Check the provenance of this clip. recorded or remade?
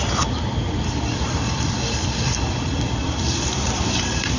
remade